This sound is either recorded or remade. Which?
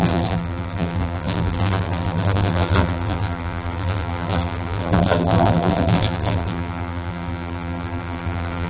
remade